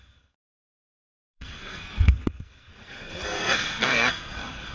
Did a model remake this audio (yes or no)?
yes